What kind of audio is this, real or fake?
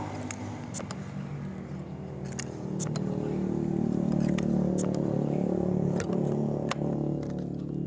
real